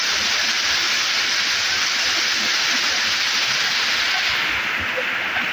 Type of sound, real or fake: real